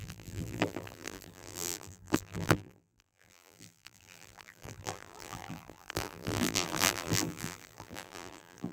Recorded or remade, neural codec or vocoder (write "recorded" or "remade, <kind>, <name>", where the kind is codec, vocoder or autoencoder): remade, vocoder, BigVGAN v2